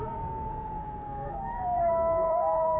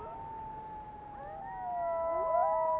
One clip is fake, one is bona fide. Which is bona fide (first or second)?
second